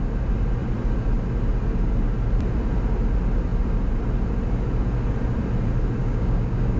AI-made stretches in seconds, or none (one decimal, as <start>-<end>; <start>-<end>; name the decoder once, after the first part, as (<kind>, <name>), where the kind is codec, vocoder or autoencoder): 6.0-6.8 (codec, DAC)